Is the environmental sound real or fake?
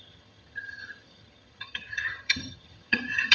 fake